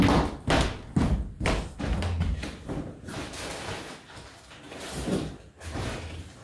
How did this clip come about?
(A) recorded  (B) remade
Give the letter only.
A